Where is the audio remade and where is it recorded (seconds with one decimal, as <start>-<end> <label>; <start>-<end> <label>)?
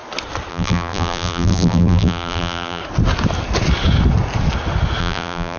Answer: 0.0-0.5 recorded; 0.5-2.8 remade; 2.8-5.0 recorded; 5.0-5.6 remade